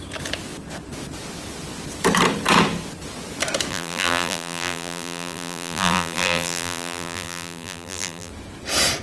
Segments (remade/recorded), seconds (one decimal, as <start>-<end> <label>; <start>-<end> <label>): 0.0-3.7 recorded; 3.7-8.3 remade; 8.3-9.0 recorded